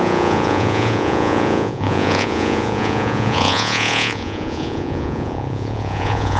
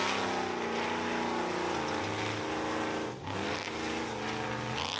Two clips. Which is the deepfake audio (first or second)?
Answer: first